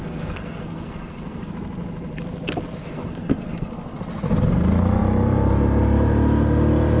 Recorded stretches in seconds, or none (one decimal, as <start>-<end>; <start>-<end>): 1.5-2.8; 4.0-7.0